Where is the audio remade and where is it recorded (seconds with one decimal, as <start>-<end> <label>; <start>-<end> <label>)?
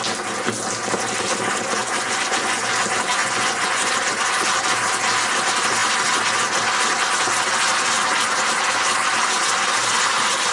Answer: 0.0-1.8 recorded; 1.8-2.6 remade; 2.6-3.2 recorded; 3.2-3.9 remade; 3.9-10.5 recorded